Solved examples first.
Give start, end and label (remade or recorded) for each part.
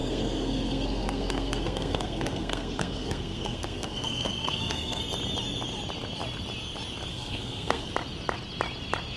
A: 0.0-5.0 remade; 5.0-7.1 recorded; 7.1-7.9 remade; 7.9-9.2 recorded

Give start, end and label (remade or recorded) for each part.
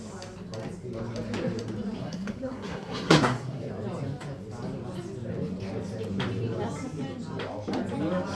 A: 0.0-2.0 recorded; 2.0-3.7 remade; 3.7-8.3 recorded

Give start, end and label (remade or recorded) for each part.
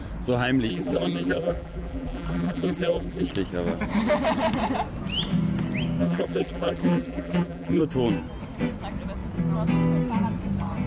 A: 0.0-0.7 recorded; 0.7-3.3 remade; 3.3-6.0 recorded; 6.0-7.8 remade; 7.8-10.9 recorded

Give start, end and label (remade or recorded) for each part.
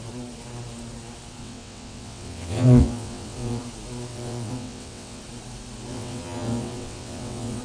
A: 0.0-1.4 recorded; 1.4-3.6 remade; 3.6-4.1 recorded; 4.1-5.2 remade; 5.2-5.9 recorded; 5.9-7.6 remade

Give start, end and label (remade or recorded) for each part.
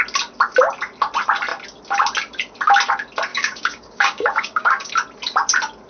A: 0.0-3.3 recorded; 3.3-4.9 remade; 4.9-5.9 recorded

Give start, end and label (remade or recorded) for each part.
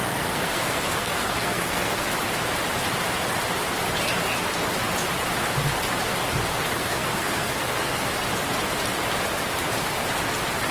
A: 0.0-2.1 remade; 2.1-6.5 recorded; 6.5-8.1 remade; 8.1-10.7 recorded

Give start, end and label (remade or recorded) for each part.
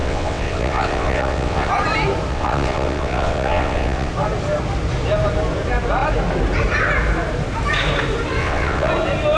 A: 0.0-1.7 remade; 1.7-2.3 recorded; 2.3-4.1 remade; 4.1-8.4 recorded; 8.4-8.9 remade; 8.9-9.4 recorded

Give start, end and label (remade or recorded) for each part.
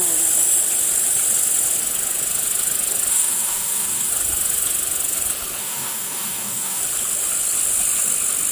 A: 0.0-3.1 recorded; 3.1-4.1 remade; 4.1-5.6 recorded; 5.6-6.8 remade; 6.8-8.5 recorded